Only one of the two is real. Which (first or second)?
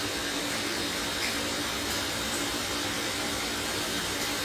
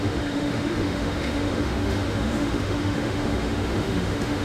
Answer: first